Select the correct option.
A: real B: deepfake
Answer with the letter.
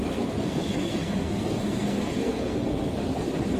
B